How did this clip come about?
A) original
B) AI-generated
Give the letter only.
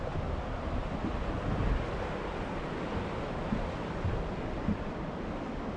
A